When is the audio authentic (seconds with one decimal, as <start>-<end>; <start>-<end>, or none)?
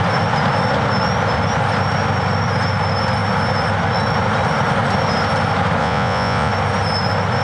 0.0-5.8; 6.5-7.4